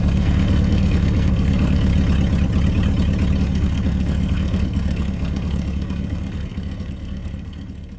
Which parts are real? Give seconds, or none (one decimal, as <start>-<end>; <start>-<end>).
1.9-3.4